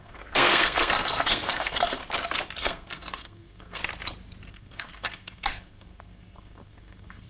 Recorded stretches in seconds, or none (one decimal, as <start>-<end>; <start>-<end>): 2.0-2.6; 3.8-4.5